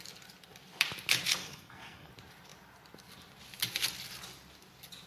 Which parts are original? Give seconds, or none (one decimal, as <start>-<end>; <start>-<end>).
0.0-1.4; 2.1-5.1